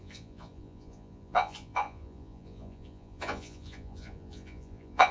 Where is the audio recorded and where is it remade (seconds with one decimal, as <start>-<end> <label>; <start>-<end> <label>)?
0.0-5.1 remade